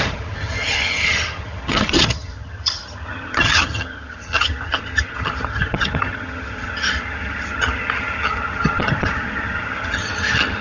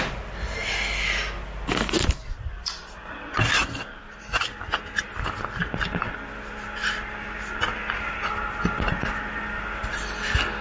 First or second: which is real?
second